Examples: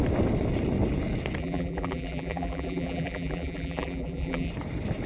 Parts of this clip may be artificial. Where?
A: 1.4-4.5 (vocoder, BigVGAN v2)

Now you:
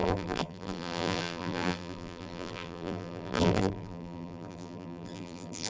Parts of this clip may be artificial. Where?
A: 0.0-5.7 (vocoder, BigVGAN v2)